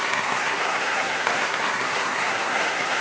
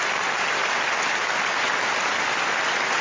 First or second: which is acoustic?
second